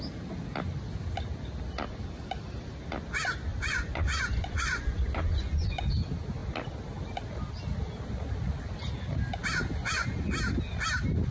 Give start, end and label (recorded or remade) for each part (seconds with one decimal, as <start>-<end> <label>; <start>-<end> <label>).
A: 0.0-3.5 recorded; 3.5-5.9 remade; 5.9-9.8 recorded; 9.8-10.3 remade; 10.3-11.3 recorded